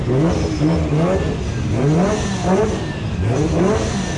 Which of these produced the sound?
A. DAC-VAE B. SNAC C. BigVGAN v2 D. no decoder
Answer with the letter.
D